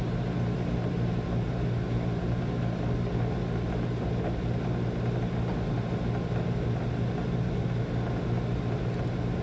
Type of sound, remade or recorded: recorded